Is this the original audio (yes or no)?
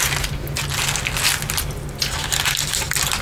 yes